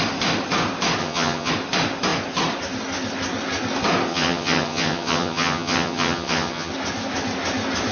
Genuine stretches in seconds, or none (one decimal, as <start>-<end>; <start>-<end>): 0.0-1.0; 1.5-4.1; 6.7-7.9